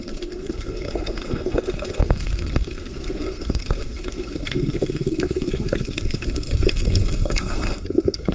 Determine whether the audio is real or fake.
fake